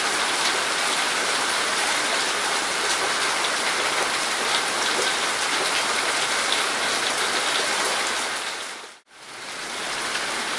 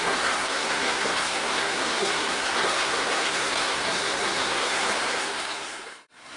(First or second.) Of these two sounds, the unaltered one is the first